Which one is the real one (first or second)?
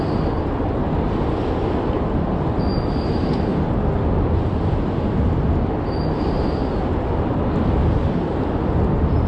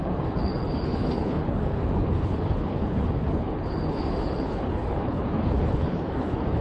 first